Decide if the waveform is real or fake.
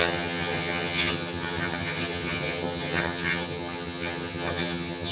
fake